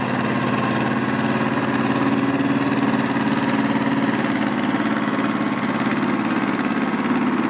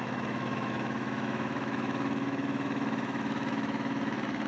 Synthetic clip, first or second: second